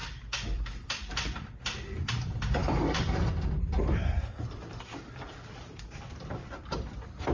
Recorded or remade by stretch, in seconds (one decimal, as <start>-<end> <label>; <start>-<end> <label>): 0.0-7.3 remade